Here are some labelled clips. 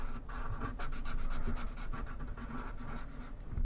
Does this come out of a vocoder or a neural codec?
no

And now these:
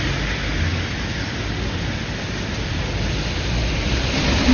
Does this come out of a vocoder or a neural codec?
no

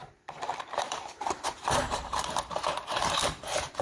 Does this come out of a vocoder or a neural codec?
yes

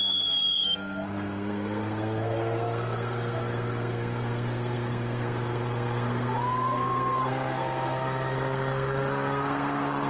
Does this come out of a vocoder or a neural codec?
yes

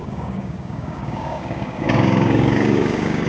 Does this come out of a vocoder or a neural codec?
yes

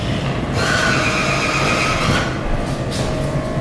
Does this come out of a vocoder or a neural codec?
no